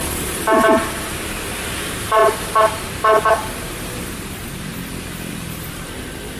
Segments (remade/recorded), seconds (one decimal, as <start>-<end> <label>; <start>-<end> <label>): 0.0-4.7 remade; 4.7-5.3 recorded; 5.3-6.4 remade